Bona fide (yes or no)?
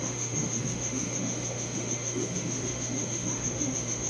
no